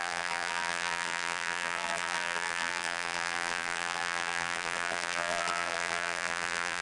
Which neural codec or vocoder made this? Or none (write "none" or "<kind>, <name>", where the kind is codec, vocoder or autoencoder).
vocoder, BigVGAN v2